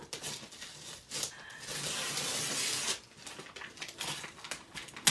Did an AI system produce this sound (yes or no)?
no